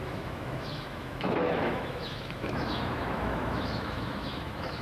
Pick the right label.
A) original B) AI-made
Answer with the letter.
B